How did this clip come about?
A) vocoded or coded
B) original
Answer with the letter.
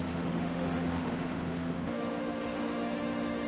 A